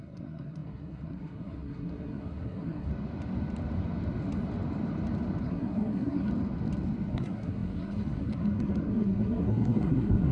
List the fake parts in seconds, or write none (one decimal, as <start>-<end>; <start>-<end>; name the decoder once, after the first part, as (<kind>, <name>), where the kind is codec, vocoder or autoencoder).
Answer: 0.0-2.9 (codec, SNAC); 5.4-6.3; 7.1-10.3